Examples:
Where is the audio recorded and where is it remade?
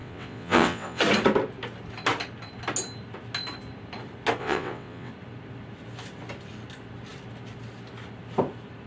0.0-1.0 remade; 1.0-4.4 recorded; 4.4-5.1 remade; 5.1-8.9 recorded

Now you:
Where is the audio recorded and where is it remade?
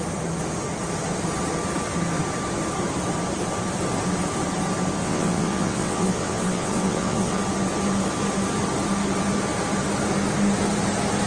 0.0-5.0 recorded; 5.0-7.4 remade; 7.4-11.3 recorded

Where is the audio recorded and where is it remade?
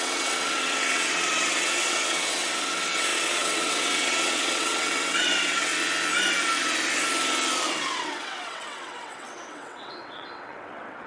0.0-5.7 remade; 5.7-7.7 recorded; 7.7-11.1 remade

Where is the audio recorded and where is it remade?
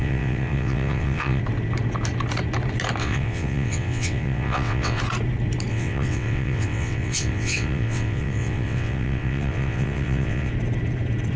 0.0-1.4 remade; 1.4-3.0 recorded; 3.0-5.0 remade; 5.0-5.7 recorded; 5.7-10.5 remade; 10.5-11.4 recorded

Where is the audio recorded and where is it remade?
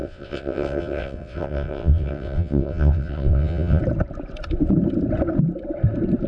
0.0-3.8 remade; 3.8-6.3 recorded